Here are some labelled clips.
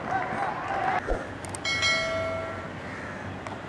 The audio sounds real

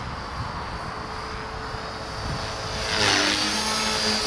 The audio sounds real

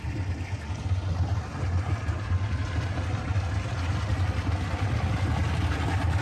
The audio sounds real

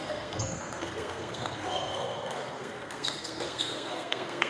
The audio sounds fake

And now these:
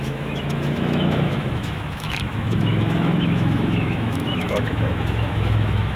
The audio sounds fake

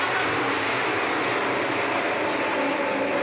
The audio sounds real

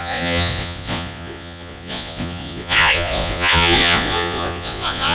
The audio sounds fake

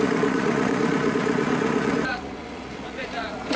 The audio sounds fake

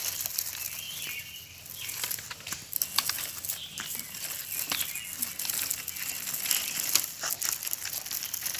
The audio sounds real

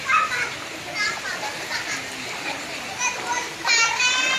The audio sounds real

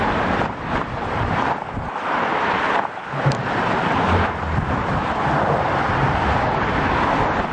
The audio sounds real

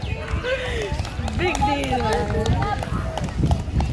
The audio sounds real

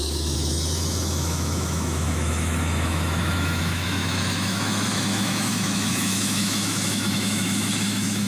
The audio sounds fake